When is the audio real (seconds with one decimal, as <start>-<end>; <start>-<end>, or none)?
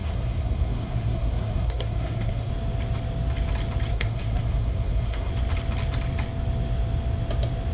2.5-3.9; 5.3-7.7